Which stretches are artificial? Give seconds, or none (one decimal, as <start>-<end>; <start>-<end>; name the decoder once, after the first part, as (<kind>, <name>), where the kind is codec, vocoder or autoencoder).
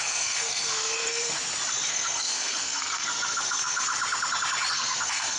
0.0-1.3 (codec, SNAC); 1.9-3.9; 4.7-5.4